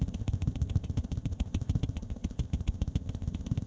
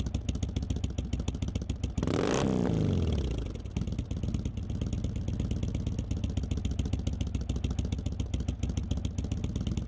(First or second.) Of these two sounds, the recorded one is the second